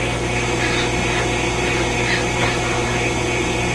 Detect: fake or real real